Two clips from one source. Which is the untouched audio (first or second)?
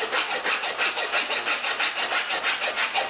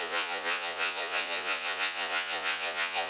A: first